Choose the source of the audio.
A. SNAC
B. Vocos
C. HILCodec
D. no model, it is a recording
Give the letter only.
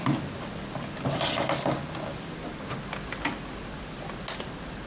D